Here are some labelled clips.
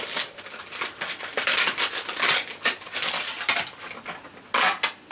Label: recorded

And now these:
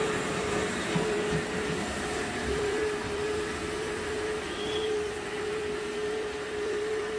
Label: remade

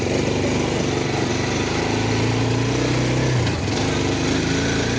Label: recorded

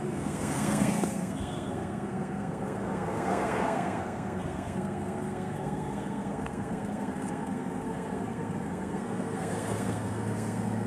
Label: remade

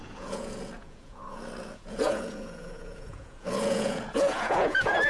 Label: remade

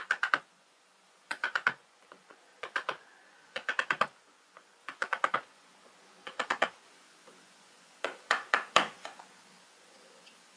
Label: remade